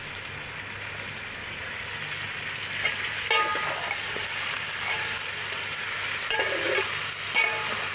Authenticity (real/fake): real